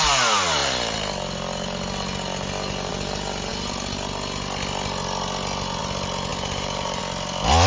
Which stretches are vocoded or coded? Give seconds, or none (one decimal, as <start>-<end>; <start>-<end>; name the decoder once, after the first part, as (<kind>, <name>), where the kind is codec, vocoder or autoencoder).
6.3-7.0 (vocoder, BigVGAN v2)